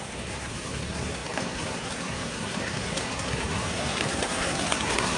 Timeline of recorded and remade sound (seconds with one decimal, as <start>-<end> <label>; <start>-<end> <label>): 0.0-5.2 remade